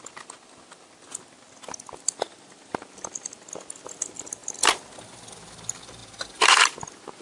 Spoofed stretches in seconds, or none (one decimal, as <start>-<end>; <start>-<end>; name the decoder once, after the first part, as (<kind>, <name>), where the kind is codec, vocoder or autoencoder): none